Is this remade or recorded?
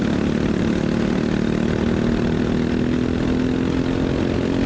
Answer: recorded